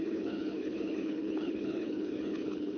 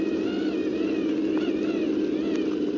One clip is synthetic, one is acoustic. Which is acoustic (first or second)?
second